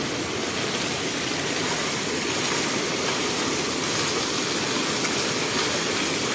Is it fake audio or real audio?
real